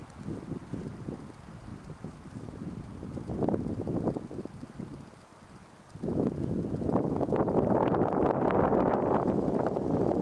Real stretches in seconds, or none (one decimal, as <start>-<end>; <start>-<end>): 0.0-1.7; 3.1-10.2